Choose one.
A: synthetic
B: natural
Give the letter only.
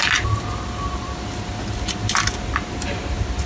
B